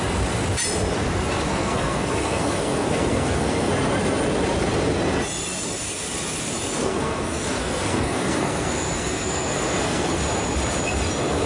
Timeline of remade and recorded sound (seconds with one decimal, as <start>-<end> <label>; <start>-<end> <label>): 0.0-1.5 recorded; 1.5-3.7 remade; 3.7-6.8 recorded; 6.8-10.2 remade; 10.2-11.5 recorded